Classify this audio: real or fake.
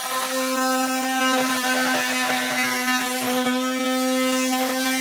real